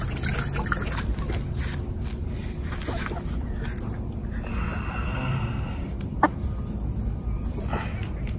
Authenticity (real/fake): real